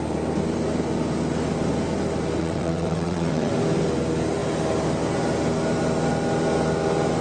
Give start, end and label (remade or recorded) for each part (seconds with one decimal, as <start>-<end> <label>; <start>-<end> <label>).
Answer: 0.0-2.4 recorded; 2.4-3.5 remade; 3.5-7.2 recorded